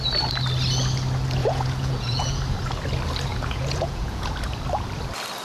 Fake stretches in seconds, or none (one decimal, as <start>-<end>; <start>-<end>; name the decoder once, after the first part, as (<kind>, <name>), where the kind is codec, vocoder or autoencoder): 1.4-2.4 (vocoder, Vocos); 3.3-4.3